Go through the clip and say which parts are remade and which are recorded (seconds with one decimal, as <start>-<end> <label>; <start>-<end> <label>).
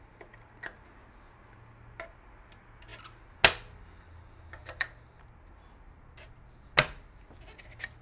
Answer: 0.0-8.0 recorded